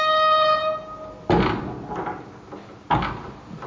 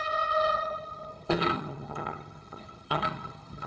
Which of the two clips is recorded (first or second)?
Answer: first